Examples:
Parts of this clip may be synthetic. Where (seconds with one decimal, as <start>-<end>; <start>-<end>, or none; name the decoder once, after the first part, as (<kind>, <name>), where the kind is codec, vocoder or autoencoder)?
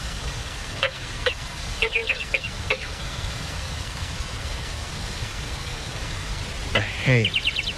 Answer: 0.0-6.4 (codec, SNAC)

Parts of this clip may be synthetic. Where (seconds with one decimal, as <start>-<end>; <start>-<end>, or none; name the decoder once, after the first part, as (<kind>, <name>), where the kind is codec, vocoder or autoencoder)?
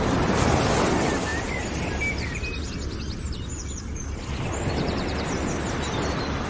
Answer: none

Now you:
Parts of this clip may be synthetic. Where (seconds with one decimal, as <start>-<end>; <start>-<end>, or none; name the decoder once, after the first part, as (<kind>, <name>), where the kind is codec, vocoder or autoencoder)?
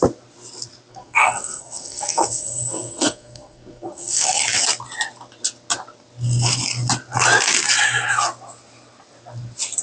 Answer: 0.9-4.4 (codec, SNAC)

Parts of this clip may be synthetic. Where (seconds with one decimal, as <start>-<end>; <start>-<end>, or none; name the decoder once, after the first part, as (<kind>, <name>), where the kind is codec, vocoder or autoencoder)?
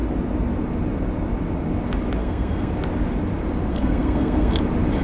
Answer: 2.2-2.7 (codec, SNAC); 3.7-4.6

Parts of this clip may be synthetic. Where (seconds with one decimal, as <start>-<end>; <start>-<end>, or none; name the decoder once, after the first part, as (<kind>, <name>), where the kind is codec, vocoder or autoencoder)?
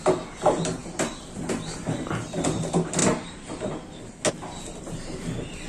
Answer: none